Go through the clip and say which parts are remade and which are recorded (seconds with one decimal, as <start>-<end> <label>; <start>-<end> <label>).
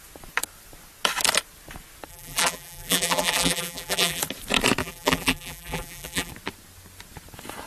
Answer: 0.0-2.1 recorded; 2.1-4.2 remade; 4.2-4.8 recorded; 4.8-6.3 remade; 6.3-7.7 recorded